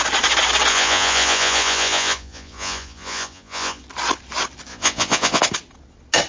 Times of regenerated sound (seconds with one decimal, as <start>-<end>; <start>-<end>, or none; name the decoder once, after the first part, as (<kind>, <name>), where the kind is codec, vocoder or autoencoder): 0.7-3.8 (vocoder, Vocos); 4.7-5.4